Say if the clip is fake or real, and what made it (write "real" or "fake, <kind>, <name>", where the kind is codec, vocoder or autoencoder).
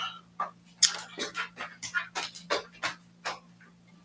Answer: real